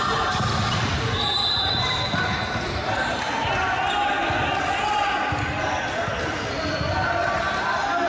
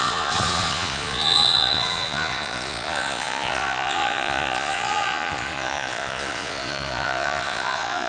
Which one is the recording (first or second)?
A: first